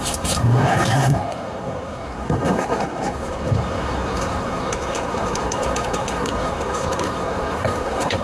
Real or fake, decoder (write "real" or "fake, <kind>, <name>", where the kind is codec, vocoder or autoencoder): fake, codec, SNAC